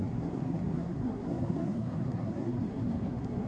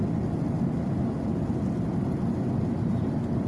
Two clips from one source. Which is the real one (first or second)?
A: second